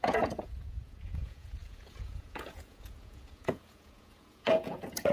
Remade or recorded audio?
remade